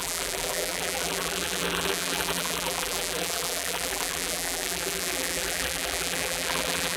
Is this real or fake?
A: fake